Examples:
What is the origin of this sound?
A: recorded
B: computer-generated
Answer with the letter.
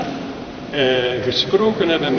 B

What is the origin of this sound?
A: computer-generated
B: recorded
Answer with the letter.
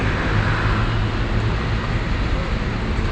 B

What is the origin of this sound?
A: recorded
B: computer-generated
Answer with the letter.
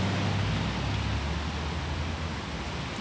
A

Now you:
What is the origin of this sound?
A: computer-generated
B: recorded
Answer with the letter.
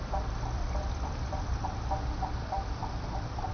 A